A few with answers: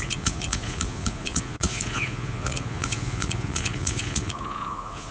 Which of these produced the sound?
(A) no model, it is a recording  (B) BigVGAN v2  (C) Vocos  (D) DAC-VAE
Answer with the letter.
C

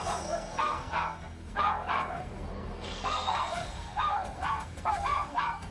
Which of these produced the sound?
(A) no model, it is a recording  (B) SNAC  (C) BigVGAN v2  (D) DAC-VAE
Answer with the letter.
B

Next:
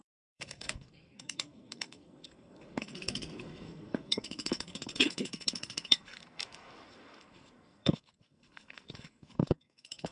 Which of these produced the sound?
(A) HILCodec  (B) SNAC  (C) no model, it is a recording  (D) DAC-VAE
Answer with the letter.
B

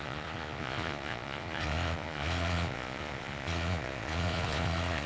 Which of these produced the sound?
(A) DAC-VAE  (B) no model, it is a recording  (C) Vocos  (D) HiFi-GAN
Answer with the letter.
C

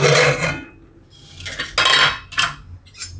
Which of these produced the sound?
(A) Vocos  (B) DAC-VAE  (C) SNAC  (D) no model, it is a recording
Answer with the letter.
D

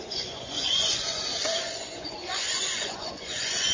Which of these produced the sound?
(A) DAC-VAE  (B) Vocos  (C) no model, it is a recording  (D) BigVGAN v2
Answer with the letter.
B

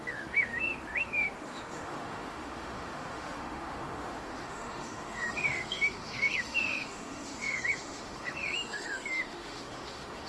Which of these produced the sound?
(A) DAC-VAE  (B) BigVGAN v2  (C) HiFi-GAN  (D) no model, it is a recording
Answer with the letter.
A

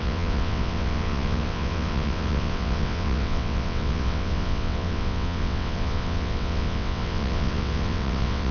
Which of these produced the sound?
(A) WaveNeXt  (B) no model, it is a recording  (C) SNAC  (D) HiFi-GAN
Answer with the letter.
A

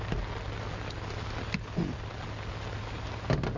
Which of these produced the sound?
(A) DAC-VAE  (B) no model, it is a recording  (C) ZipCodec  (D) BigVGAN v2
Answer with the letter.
B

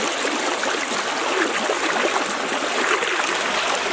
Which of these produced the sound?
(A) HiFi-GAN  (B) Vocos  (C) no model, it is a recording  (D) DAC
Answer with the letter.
C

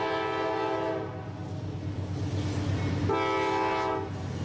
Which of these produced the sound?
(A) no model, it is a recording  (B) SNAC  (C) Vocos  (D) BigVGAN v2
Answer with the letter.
A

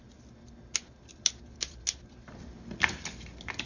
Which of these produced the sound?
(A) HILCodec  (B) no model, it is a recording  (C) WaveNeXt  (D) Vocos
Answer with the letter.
B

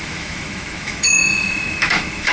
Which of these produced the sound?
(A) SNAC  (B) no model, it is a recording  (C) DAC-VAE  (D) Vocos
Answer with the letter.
C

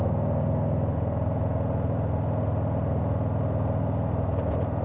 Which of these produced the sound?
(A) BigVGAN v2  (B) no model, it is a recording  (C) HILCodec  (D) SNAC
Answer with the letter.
B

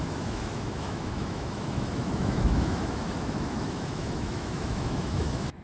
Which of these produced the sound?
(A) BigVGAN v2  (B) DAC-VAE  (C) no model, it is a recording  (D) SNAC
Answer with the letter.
B